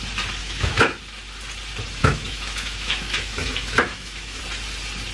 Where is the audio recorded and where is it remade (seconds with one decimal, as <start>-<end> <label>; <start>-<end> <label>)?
0.0-0.4 recorded; 0.4-1.0 remade; 1.0-2.0 recorded; 2.0-4.4 remade; 4.4-5.1 recorded

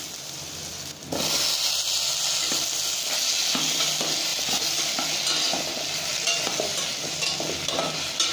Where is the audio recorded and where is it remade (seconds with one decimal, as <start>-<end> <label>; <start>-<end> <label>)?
0.0-8.3 recorded

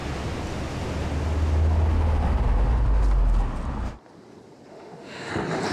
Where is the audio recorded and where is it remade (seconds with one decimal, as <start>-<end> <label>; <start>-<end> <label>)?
0.0-4.7 recorded; 4.7-5.3 remade; 5.3-5.7 recorded

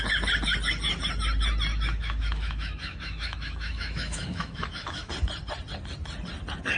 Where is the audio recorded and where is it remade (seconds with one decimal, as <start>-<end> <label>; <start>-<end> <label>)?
0.0-1.7 recorded; 1.7-5.1 remade; 5.1-6.8 recorded

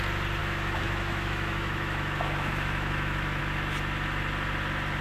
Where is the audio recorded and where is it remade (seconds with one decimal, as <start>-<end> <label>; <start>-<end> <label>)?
0.0-0.4 recorded; 0.4-3.4 remade; 3.4-5.0 recorded

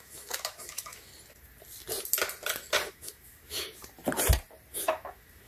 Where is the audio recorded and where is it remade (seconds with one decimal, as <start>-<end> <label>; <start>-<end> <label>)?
0.0-1.1 remade; 1.1-2.9 recorded; 2.9-3.8 remade; 3.8-4.7 recorded; 4.7-5.5 remade